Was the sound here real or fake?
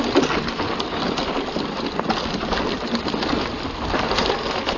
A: real